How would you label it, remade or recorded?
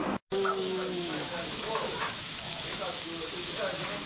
remade